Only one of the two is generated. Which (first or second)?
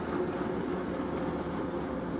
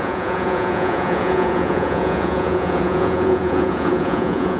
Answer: second